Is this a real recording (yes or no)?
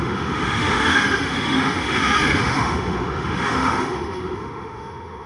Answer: no